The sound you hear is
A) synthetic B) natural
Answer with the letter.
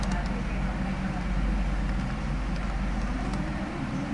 B